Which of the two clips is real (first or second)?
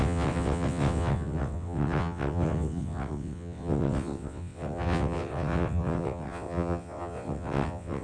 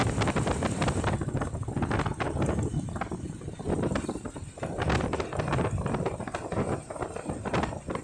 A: second